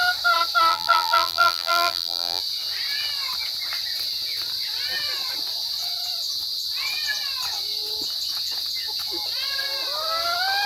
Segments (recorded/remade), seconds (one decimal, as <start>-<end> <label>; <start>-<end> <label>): 0.0-0.7 recorded; 0.7-2.4 remade; 2.4-10.7 recorded